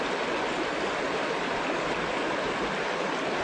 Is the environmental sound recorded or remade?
recorded